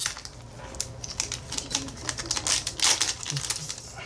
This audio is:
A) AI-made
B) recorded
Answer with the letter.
B